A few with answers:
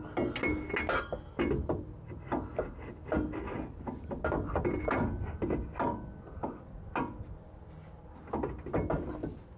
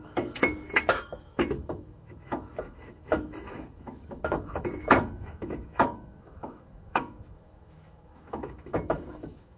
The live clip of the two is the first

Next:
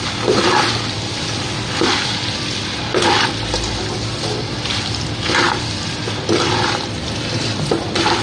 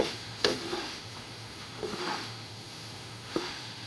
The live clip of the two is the first